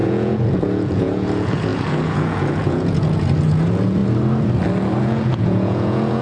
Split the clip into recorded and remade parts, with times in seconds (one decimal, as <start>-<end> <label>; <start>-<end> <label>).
0.0-4.0 remade; 4.0-5.0 recorded; 5.0-6.2 remade